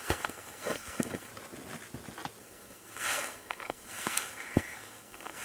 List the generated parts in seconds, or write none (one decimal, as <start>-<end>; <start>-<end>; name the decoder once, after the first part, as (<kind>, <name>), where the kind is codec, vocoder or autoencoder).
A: 0.0-1.3 (codec, SNAC); 2.4-5.4